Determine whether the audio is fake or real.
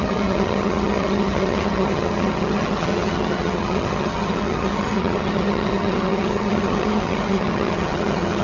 fake